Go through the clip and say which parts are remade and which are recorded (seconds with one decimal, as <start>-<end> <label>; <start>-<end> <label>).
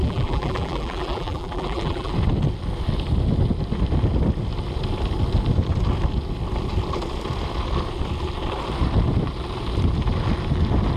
0.0-2.1 remade; 2.1-11.0 recorded